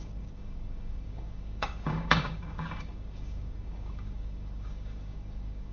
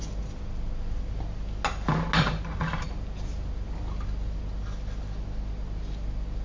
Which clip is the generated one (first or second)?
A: first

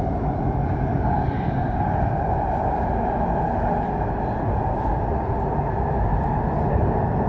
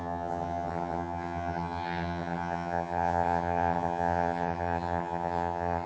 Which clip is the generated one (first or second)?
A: second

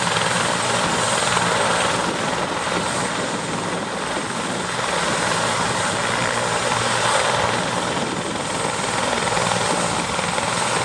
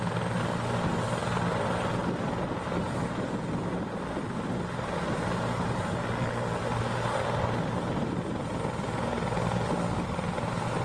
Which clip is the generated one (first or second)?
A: first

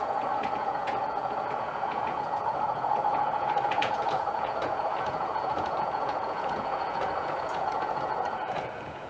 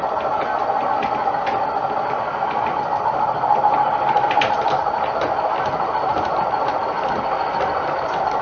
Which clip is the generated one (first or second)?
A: first